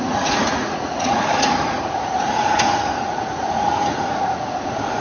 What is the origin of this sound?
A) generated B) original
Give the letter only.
A